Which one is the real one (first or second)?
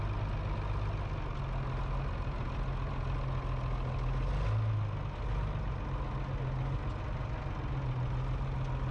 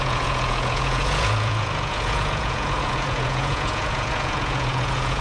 first